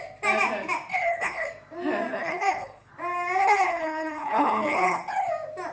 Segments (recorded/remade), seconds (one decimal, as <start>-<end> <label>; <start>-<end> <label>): 0.0-0.9 recorded; 0.9-1.5 remade; 1.5-2.1 recorded; 2.1-2.9 remade; 2.9-3.4 recorded; 3.4-5.3 remade; 5.3-5.7 recorded